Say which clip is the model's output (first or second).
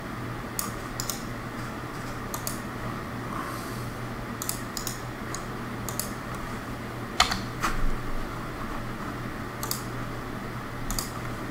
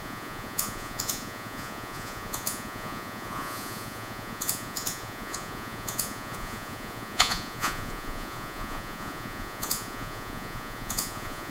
second